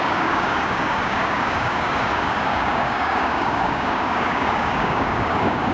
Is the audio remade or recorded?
remade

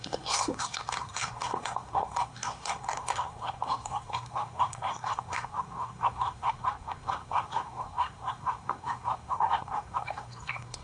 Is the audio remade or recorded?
remade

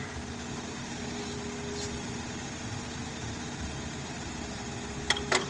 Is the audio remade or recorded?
recorded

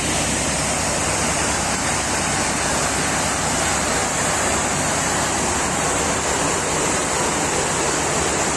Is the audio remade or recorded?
recorded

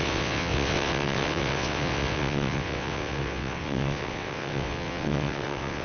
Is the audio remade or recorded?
remade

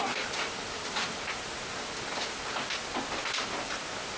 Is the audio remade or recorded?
recorded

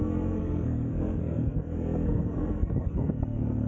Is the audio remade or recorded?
remade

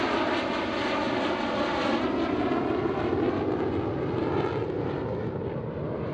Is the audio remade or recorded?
recorded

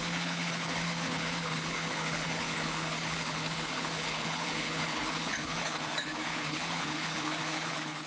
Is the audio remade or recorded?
remade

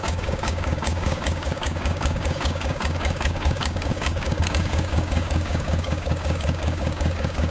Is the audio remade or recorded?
remade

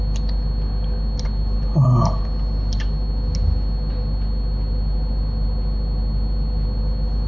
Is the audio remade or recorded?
recorded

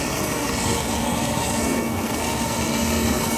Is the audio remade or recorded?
remade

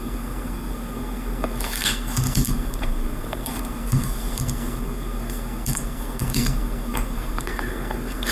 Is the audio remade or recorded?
remade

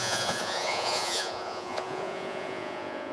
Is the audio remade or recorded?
remade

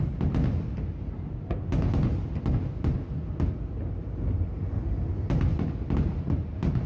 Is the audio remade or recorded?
recorded